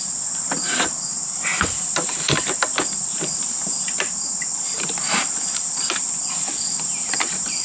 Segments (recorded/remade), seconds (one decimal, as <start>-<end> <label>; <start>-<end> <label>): 0.0-7.6 remade